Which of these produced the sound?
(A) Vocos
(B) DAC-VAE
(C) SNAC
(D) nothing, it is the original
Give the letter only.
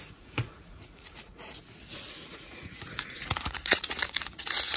A